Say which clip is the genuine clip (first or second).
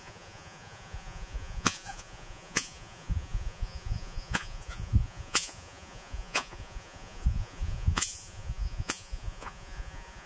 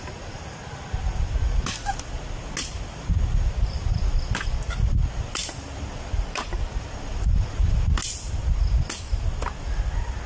second